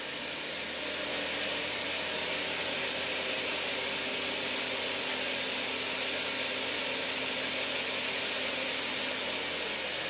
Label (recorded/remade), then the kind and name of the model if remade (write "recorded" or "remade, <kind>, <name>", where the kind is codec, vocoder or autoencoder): recorded